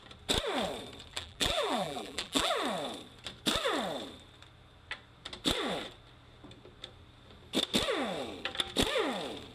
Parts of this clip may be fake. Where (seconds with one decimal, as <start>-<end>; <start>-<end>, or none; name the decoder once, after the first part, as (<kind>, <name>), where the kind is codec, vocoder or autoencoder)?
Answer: 1.1-2.5 (vocoder, BigVGAN v2)